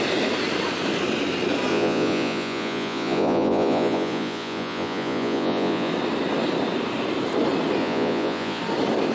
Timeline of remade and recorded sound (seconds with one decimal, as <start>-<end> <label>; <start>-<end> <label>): 0.0-1.7 recorded; 1.7-5.9 remade; 5.9-7.8 recorded; 7.8-8.6 remade; 8.6-9.1 recorded